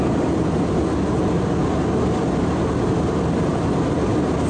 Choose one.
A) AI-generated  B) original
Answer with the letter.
B